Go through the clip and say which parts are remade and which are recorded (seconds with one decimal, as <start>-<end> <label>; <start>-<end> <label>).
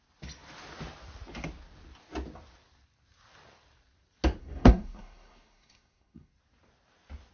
0.0-4.4 recorded; 4.4-6.3 remade; 6.3-7.3 recorded